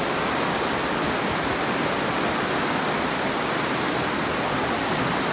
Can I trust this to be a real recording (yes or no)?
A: yes